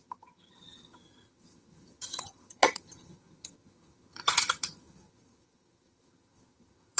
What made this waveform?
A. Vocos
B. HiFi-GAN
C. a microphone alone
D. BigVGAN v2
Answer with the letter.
B